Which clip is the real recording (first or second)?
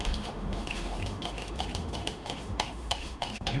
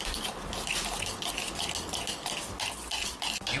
second